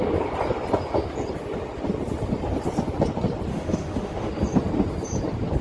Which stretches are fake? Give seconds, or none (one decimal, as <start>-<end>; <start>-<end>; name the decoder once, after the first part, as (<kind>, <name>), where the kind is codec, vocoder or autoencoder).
3.5-4.3 (autoencoder, DAC-VAE)